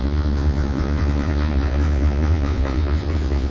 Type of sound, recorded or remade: remade